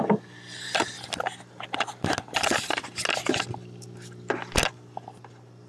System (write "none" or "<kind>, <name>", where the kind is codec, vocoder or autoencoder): none